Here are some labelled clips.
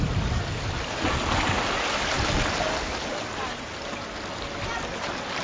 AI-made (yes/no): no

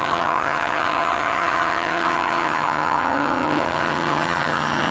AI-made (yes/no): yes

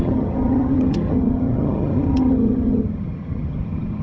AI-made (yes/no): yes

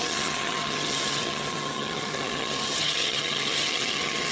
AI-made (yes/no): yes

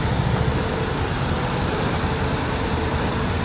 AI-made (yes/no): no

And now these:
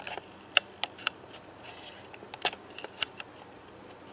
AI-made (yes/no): no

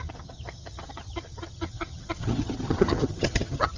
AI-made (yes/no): yes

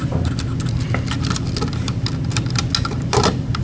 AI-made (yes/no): no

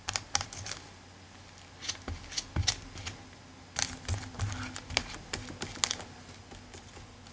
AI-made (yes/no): no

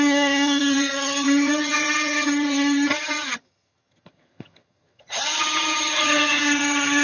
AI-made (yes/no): yes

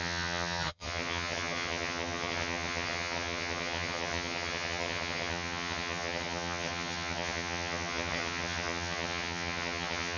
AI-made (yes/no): yes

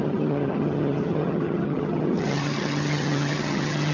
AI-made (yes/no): yes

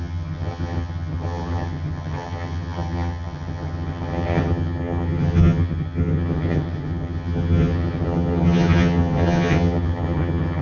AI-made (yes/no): yes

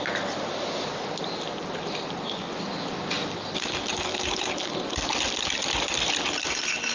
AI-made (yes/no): no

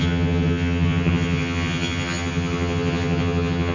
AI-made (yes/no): yes